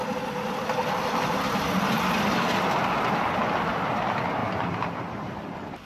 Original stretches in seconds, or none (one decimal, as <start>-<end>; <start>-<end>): 0.0-5.9